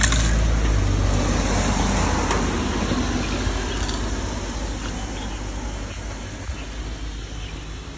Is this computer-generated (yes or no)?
no